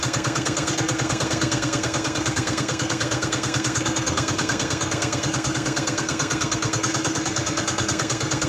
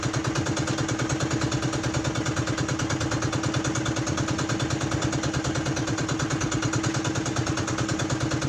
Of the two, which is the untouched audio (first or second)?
second